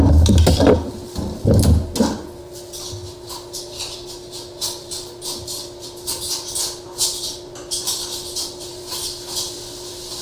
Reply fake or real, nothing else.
real